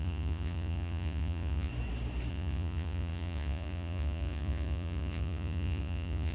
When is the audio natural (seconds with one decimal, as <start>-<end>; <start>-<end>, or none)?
1.7-2.3